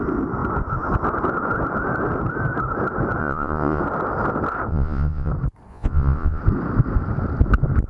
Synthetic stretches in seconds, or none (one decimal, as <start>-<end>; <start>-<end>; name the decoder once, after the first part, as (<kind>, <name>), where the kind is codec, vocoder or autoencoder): 3.2-3.8 (vocoder, Vocos); 4.7-5.3; 5.7-6.4

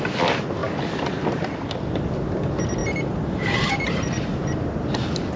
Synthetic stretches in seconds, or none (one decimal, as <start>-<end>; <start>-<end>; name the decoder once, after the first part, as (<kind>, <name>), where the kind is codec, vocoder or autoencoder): 2.8-4.7 (vocoder, BigVGAN v2)

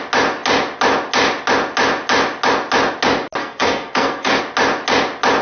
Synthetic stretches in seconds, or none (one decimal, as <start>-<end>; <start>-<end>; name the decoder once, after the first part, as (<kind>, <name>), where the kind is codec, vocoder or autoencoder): 3.4-4.4 (codec, SNAC)